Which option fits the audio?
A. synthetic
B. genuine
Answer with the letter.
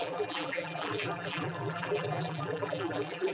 A